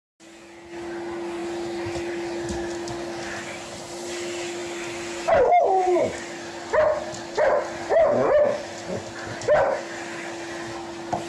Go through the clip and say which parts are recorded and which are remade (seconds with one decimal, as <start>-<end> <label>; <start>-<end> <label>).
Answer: 0.0-11.3 recorded